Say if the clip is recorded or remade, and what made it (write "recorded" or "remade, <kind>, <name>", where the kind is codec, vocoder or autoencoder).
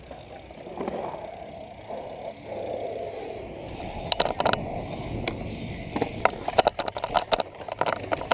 recorded